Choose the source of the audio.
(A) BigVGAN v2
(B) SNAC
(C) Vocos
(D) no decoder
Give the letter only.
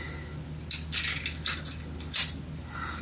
D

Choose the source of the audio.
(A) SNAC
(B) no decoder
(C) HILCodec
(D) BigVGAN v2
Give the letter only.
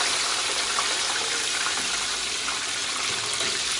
B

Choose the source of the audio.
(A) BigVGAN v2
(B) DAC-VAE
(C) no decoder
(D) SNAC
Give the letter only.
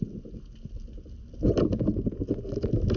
C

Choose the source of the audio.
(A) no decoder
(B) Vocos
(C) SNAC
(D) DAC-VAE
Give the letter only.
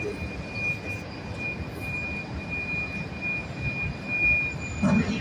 A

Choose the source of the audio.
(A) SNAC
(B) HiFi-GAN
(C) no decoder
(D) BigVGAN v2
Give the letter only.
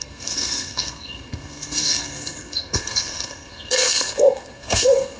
A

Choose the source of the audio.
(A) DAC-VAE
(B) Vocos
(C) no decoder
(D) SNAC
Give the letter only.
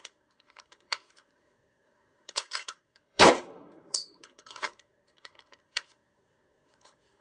D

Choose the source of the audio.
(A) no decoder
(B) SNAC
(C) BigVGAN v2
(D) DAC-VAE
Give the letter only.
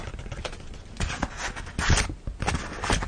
A